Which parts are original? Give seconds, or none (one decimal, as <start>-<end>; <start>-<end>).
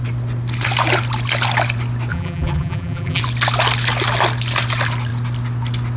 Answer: 0.0-2.1; 3.2-6.0